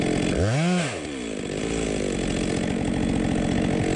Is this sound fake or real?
real